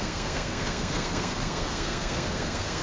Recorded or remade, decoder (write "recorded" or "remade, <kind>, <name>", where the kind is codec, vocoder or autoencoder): remade, codec, SNAC